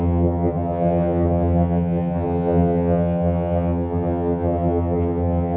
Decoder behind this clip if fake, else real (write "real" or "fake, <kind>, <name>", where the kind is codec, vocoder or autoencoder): fake, vocoder, HiFi-GAN